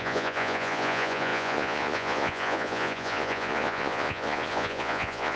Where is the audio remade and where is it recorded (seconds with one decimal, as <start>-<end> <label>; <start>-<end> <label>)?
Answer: 0.0-5.4 remade